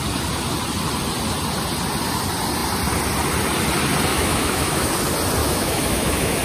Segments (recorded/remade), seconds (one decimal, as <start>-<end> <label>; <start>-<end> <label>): 0.0-4.1 recorded; 4.1-4.9 remade; 4.9-5.4 recorded; 5.4-6.4 remade